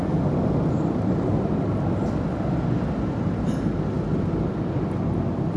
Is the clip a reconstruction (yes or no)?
no